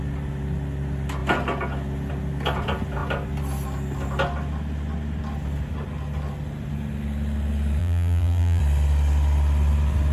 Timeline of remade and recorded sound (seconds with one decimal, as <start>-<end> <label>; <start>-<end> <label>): 0.0-7.8 recorded; 7.8-8.6 remade; 8.6-10.1 recorded